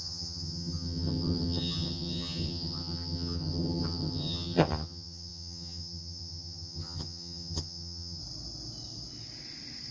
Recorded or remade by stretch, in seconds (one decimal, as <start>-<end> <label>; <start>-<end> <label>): 0.0-8.2 remade; 8.2-9.9 recorded